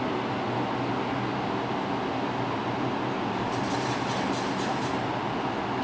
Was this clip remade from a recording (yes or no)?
no